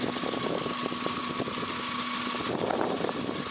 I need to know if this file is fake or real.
real